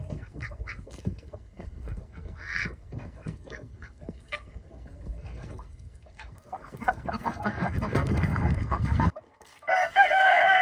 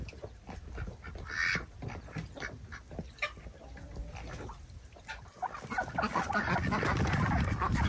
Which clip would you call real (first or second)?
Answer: second